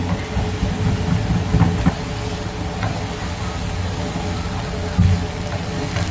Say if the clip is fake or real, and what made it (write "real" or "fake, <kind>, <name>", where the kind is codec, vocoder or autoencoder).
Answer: real